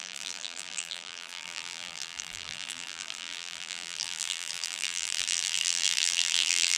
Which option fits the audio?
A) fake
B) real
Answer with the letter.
A